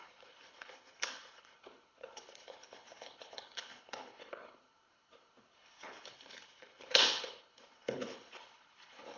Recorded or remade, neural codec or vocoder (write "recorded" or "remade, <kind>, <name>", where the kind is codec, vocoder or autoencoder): remade, codec, HILCodec